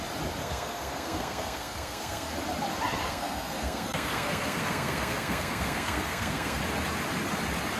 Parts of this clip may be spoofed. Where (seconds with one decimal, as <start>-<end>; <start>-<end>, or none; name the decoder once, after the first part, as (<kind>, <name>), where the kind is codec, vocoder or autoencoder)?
0.4-2.3 (codec, SNAC); 3.0-6.6